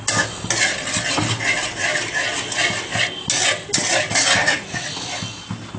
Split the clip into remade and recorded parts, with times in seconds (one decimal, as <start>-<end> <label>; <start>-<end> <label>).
0.0-4.4 recorded; 4.4-4.9 remade; 4.9-5.8 recorded